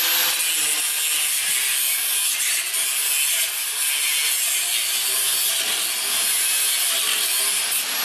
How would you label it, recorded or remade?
recorded